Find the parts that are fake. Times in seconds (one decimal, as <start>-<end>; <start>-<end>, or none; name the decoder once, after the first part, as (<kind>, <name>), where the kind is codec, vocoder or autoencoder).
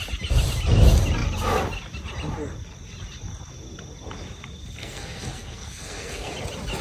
4.8-6.3 (codec, SNAC)